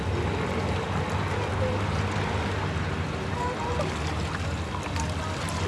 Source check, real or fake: real